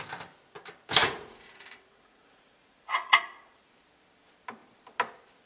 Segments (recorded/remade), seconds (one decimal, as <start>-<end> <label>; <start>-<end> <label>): 0.0-1.0 recorded; 1.0-3.7 remade; 3.7-5.5 recorded